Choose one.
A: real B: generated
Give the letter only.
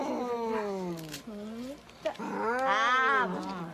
A